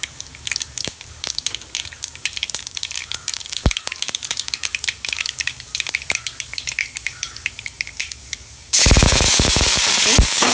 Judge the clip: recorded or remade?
remade